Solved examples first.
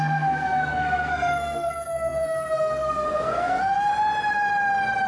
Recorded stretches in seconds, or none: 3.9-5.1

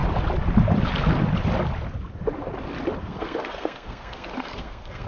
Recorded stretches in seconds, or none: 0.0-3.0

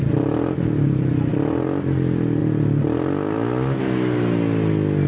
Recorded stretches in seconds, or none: 0.0-5.1

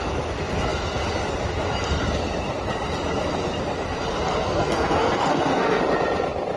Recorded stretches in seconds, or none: 0.0-4.3; 5.8-6.6

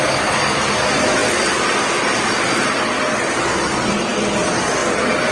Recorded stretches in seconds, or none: 0.0-5.3

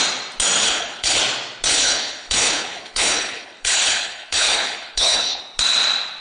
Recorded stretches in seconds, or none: 0.0-0.6; 1.2-1.7; 5.4-6.2